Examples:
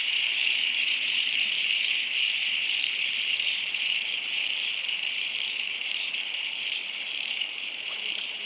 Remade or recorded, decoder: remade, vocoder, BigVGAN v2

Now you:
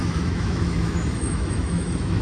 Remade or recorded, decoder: remade, autoencoder, DAC-VAE